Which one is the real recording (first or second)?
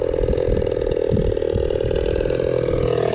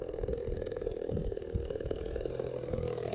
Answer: first